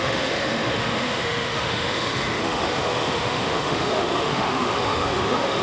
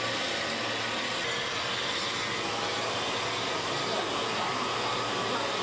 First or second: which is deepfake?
first